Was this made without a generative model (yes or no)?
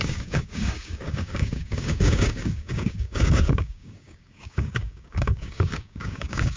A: no